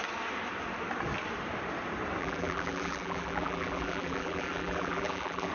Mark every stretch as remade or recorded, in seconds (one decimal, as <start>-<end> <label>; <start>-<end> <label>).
0.0-2.2 recorded; 2.2-5.5 remade